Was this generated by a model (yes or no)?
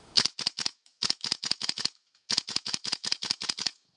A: yes